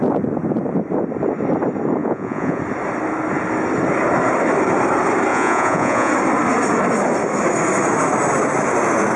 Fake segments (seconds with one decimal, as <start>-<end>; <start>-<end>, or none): 2.0-2.6; 5.3-6.1